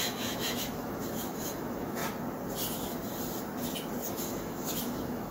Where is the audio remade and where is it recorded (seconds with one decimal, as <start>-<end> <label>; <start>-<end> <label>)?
0.0-2.0 remade; 2.0-4.1 recorded; 4.1-5.3 remade